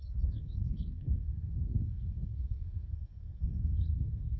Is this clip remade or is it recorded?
remade